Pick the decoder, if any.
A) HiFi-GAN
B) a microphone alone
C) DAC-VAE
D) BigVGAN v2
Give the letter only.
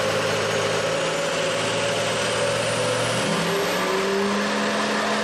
B